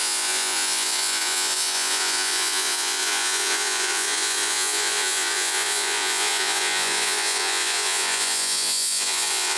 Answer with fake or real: fake